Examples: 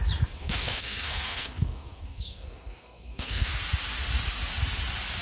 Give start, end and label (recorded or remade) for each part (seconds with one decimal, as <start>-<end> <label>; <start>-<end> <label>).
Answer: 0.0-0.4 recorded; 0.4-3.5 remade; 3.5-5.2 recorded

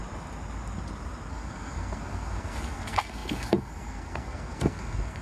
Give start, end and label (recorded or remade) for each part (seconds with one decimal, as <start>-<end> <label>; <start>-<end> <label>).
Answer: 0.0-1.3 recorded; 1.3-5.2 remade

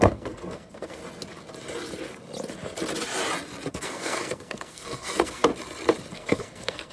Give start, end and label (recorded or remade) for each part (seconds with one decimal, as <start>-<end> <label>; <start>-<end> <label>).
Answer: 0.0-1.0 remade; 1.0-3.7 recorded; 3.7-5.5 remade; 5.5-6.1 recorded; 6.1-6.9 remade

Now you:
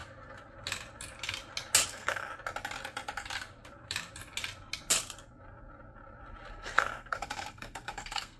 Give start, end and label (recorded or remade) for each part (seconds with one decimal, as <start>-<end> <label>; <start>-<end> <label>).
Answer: 0.0-1.9 recorded; 1.9-2.3 remade; 2.3-6.5 recorded; 6.5-8.4 remade

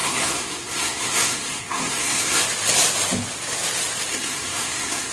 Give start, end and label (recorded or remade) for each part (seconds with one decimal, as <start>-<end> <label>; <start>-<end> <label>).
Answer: 0.0-2.4 remade; 2.4-4.1 recorded; 4.1-5.1 remade

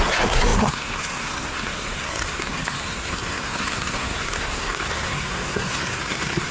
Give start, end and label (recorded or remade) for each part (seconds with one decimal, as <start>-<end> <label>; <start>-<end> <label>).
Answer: 0.0-6.5 remade

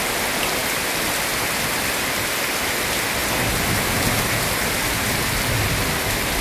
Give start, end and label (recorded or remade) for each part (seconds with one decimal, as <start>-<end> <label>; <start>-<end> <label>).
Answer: 0.0-6.4 recorded

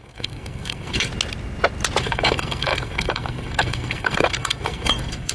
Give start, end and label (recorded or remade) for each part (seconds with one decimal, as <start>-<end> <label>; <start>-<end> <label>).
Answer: 0.0-1.1 remade; 1.1-2.0 recorded; 2.0-5.3 remade